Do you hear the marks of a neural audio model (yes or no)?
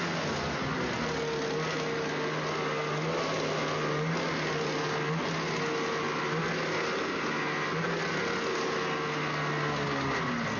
no